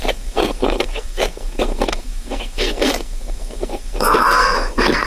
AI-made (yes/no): yes